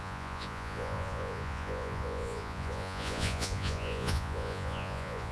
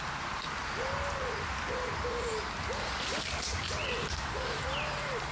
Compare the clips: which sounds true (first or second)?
second